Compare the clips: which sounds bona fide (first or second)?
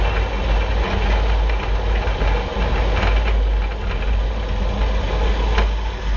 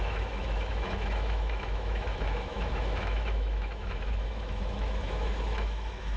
first